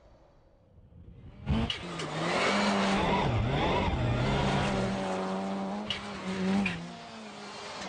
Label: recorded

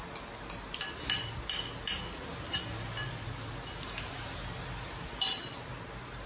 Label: recorded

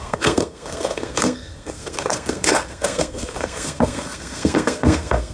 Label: remade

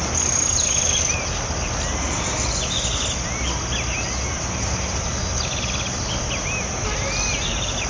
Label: recorded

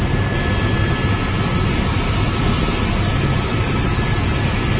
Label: recorded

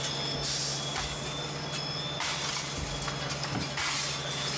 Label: recorded